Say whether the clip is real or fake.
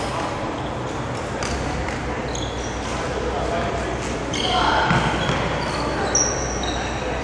real